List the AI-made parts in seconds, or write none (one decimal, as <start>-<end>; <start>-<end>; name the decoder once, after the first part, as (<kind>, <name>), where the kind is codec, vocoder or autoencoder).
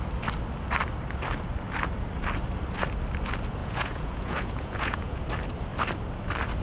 3.6-5.2 (vocoder, Vocos)